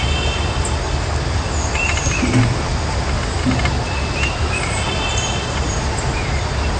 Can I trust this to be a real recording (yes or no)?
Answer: yes